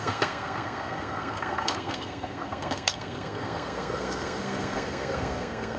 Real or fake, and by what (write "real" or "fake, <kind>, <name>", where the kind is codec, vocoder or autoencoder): fake, codec, SNAC